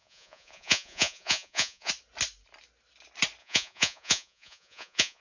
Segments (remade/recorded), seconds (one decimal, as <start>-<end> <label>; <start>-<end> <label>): 0.0-1.9 remade; 1.9-3.4 recorded; 3.4-5.2 remade